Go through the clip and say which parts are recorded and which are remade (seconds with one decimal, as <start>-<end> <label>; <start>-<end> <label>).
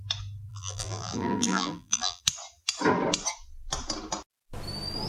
0.0-0.5 recorded; 0.5-2.2 remade; 2.2-5.1 recorded